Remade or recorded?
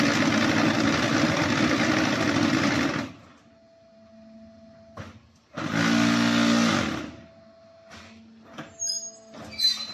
recorded